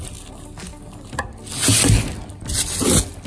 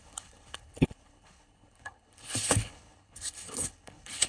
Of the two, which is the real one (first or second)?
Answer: first